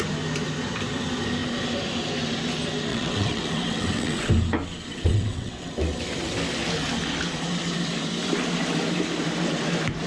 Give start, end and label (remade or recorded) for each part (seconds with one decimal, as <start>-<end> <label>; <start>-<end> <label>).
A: 0.0-2.9 recorded; 2.9-4.3 remade; 4.3-4.9 recorded; 4.9-5.7 remade; 5.7-10.1 recorded